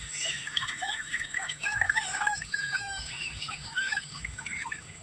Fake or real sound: fake